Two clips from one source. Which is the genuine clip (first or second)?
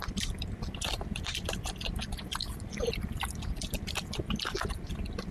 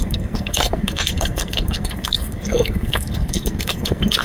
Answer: first